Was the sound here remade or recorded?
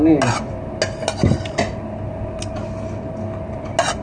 recorded